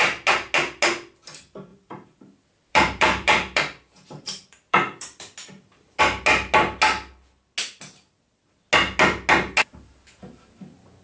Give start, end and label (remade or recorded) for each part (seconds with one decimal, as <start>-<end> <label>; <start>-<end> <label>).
0.0-1.7 recorded; 1.7-6.0 remade; 6.0-11.0 recorded